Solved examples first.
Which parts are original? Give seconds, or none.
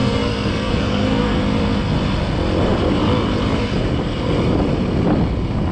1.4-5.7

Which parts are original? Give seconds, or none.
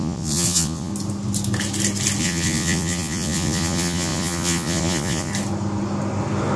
0.9-2.2; 5.3-6.6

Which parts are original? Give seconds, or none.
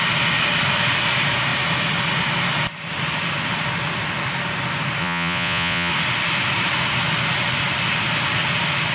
0.0-5.0; 5.9-8.9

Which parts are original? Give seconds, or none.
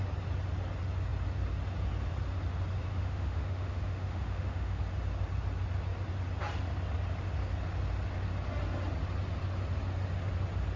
0.0-2.9; 4.8-10.8